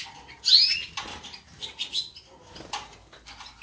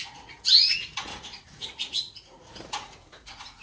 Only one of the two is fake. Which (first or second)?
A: second